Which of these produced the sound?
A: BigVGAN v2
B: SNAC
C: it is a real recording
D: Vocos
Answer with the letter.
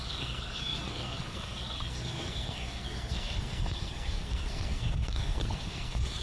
B